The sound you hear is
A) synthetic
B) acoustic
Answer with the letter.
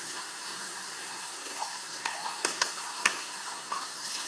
A